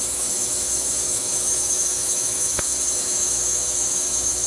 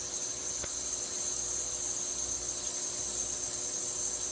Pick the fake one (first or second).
first